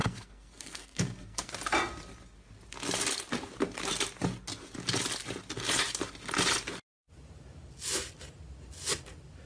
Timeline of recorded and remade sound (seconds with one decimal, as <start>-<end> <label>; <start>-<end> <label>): 0.0-1.5 remade; 1.5-9.5 recorded